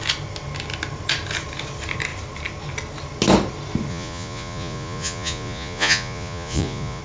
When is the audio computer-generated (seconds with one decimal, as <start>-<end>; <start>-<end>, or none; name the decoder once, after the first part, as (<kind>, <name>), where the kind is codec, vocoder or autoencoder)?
3.9-7.0 (vocoder, Vocos)